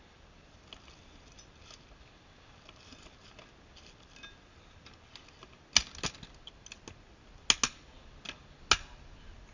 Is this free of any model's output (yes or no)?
yes